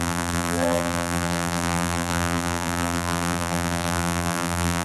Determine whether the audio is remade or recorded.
remade